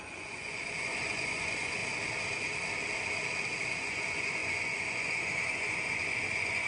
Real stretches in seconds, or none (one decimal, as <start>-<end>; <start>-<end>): 1.8-3.8